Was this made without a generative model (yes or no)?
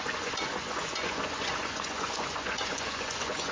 no